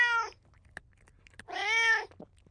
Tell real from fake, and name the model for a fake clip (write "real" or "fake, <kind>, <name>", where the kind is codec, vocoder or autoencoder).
real